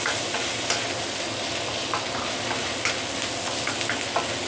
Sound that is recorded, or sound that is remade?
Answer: recorded